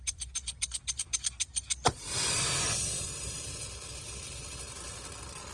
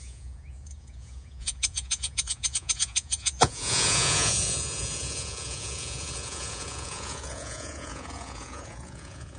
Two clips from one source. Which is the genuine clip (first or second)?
first